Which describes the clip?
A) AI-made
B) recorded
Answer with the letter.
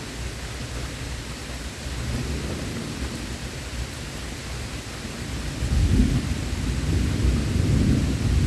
B